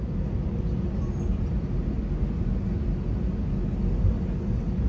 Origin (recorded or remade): recorded